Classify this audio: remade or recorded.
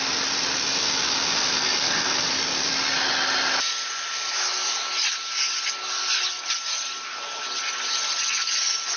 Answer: recorded